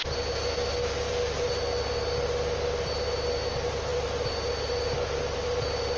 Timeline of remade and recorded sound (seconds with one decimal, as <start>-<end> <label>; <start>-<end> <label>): 0.0-6.0 recorded